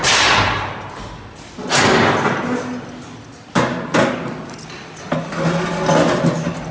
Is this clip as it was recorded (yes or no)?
yes